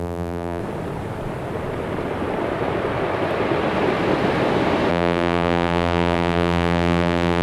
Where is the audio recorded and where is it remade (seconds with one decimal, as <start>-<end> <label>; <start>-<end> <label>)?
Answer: 0.0-0.6 remade; 0.6-4.9 recorded; 4.9-7.4 remade